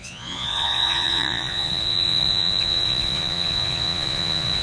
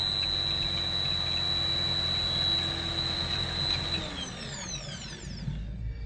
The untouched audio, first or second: second